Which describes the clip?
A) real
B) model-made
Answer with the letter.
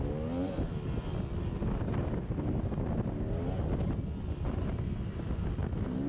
A